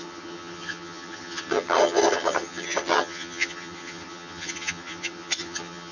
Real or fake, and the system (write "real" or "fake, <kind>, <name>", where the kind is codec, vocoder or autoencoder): fake, vocoder, HiFi-GAN